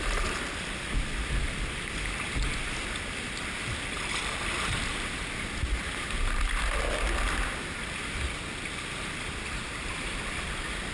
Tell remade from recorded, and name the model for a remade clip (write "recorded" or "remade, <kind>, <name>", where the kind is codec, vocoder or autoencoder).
recorded